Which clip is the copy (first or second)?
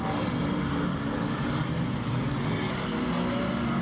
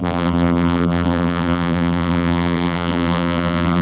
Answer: second